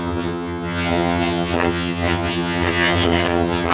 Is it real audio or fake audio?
fake